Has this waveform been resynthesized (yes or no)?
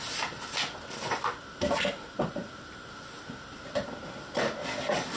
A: no